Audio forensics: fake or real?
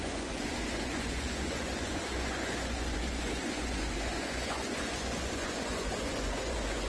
fake